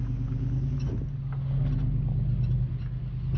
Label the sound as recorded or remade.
recorded